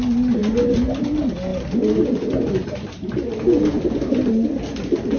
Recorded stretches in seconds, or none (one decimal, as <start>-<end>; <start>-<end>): 0.0-5.2